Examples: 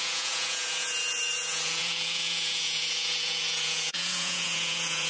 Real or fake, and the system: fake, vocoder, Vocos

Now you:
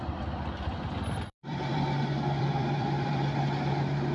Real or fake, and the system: fake, vocoder, BigVGAN v2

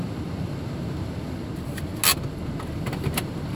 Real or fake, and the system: real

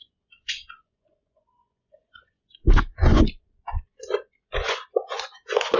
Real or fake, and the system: fake, vocoder, Vocos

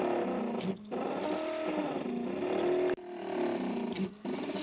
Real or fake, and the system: real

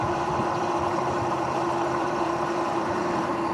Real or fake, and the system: fake, vocoder, BigVGAN v2